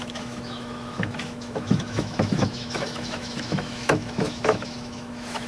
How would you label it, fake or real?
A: fake